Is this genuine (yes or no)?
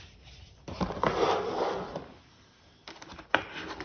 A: yes